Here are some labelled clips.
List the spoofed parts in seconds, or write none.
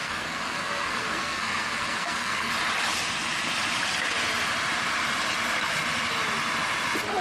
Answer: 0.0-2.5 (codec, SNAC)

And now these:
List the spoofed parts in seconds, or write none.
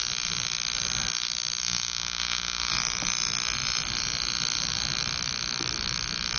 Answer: 1.6-2.7 (autoencoder, DAC-VAE)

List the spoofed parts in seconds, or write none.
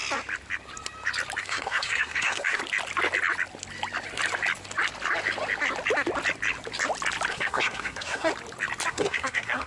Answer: 1.4-2.6 (codec, SNAC); 7.3-8.3; 8.9-9.7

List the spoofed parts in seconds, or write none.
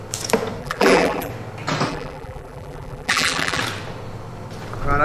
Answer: 0.6-1.3 (vocoder, BigVGAN v2); 1.9-3.6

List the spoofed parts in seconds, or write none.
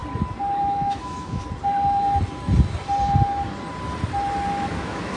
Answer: 0.6-1.4 (autoencoder, DAC-VAE); 4.5-5.2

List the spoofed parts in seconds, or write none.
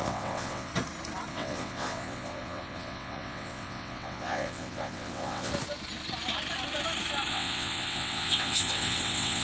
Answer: 0.0-0.7 (vocoder, WaveNeXt); 1.3-5.5; 7.3-9.4